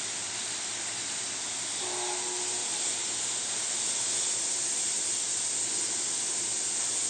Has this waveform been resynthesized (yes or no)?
no